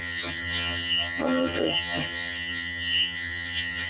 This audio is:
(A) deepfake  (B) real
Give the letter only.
A